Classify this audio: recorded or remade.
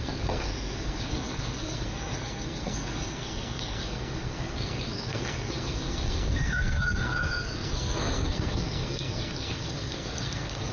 remade